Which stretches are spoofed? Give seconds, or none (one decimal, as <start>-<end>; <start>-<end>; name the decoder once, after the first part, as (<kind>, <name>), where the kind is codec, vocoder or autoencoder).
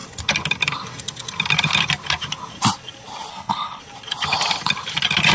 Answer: 3.3-3.8 (codec, HILCodec)